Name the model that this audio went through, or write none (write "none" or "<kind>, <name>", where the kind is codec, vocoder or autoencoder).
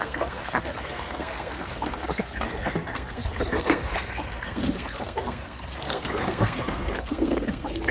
codec, SNAC